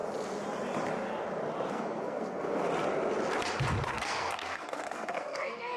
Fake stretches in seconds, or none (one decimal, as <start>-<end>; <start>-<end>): 1.7-2.7; 3.9-5.8